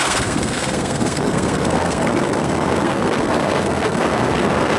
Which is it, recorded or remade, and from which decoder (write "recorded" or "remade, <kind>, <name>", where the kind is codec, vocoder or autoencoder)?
remade, codec, SNAC